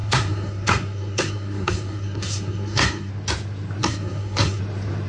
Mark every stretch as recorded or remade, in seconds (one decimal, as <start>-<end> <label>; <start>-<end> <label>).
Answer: 0.0-3.1 remade; 3.1-3.8 recorded; 3.8-4.6 remade; 4.6-5.1 recorded